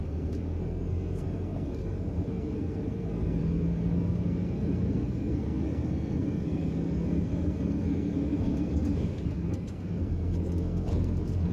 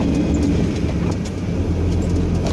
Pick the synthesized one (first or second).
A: first